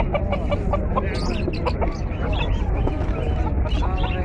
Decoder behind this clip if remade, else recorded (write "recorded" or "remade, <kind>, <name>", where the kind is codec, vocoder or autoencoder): recorded